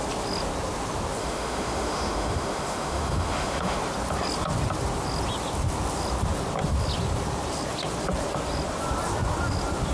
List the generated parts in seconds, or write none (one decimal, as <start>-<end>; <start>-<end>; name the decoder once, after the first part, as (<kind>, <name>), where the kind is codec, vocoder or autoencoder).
1.2-3.8 (autoencoder, DAC-VAE)